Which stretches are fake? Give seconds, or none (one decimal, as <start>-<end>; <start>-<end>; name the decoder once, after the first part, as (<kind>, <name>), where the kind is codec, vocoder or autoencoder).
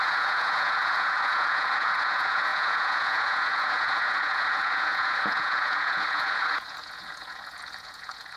0.0-8.4 (vocoder, Vocos)